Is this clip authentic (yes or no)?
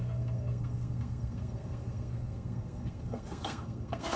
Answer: no